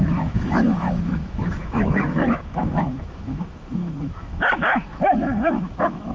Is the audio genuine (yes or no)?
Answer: no